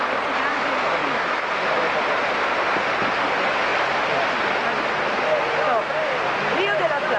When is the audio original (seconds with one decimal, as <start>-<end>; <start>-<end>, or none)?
0.0-1.0; 1.5-7.2